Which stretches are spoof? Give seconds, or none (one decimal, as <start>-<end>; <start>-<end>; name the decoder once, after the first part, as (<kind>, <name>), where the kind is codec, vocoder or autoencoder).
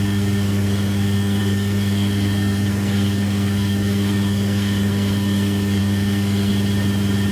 0.0-6.5 (codec, SNAC)